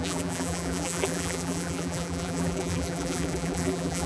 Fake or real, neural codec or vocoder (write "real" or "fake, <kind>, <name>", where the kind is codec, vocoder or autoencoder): fake, vocoder, BigVGAN v2